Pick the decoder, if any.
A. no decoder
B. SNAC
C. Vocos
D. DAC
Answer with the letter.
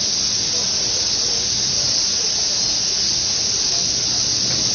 A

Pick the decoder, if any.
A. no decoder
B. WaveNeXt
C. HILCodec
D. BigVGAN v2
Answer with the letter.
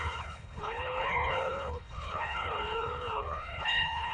C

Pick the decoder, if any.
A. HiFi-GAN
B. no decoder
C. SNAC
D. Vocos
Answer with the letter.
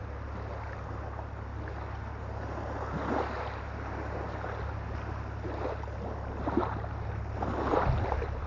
B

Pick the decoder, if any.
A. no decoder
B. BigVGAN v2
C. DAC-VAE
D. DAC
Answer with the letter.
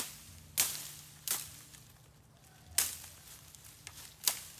A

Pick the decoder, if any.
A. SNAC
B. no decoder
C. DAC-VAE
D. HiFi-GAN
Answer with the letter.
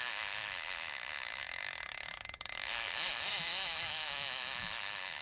C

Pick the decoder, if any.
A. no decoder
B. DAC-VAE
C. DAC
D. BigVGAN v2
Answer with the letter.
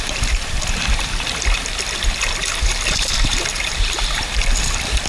D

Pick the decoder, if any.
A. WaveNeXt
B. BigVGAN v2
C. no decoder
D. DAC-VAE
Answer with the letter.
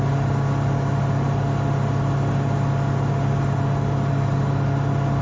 C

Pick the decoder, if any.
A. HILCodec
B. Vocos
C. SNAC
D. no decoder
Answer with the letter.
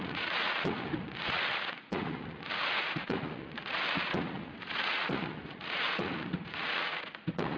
B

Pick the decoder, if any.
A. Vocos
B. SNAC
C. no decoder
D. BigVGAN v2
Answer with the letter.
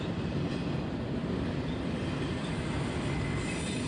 C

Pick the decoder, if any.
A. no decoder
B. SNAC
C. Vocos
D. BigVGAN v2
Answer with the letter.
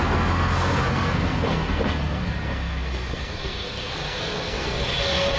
B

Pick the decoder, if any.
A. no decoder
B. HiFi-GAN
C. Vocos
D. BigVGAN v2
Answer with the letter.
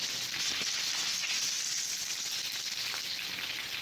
A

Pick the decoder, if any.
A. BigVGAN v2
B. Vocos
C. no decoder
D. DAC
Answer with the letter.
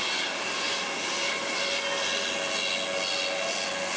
C